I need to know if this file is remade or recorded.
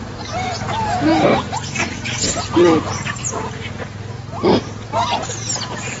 recorded